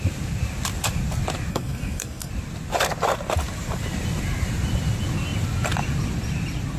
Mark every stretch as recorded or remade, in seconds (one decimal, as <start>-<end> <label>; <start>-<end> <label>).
0.0-1.5 recorded; 1.5-2.3 remade; 2.3-6.8 recorded